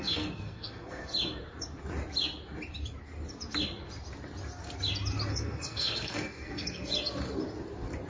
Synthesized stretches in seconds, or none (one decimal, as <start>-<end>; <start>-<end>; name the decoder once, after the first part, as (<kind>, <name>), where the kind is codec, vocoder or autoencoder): 0.0-1.1 (codec, SNAC); 5.3-6.9